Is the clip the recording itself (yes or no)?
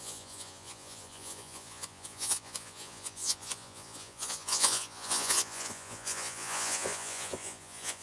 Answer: no